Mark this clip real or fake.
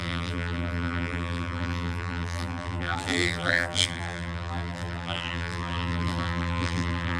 fake